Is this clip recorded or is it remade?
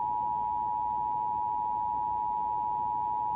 recorded